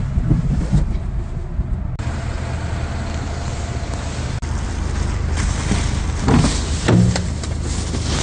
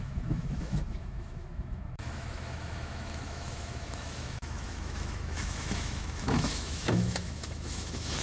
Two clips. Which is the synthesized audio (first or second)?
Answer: second